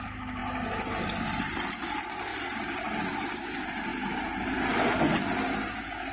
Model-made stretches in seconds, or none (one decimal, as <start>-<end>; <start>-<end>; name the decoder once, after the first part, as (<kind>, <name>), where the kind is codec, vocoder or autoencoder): none